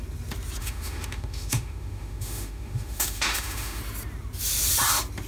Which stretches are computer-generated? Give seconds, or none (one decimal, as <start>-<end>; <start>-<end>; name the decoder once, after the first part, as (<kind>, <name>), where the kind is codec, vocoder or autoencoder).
0.6-3.8 (autoencoder, DAC-VAE)